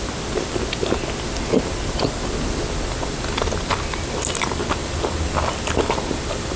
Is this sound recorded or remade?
recorded